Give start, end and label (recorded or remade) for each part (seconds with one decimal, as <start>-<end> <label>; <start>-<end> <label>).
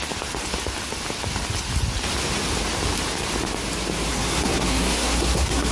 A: 0.0-4.1 recorded; 4.1-5.7 remade